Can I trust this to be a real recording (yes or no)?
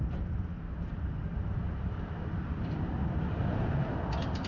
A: yes